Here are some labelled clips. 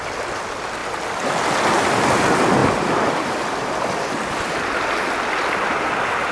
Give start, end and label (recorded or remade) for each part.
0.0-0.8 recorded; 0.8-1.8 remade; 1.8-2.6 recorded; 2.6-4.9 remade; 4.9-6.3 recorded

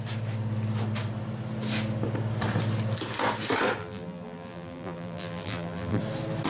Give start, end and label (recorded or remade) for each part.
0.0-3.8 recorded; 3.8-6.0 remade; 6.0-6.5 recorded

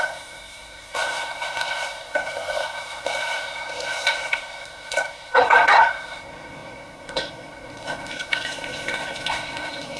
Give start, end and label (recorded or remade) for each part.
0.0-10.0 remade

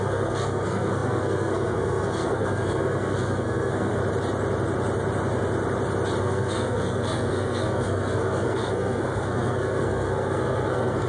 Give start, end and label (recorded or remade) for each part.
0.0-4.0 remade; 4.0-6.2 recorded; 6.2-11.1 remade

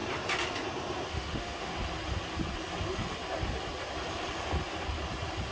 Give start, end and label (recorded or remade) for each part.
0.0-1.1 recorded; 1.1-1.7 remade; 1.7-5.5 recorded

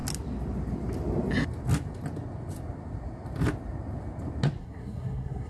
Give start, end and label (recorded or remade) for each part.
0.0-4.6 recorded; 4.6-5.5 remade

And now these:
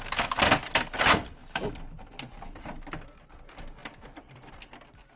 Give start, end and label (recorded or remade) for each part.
0.0-1.4 recorded; 1.4-2.6 remade; 2.6-3.8 recorded; 3.8-4.5 remade; 4.5-5.2 recorded

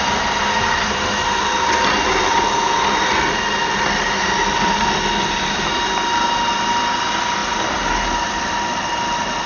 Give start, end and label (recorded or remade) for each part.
0.0-9.5 recorded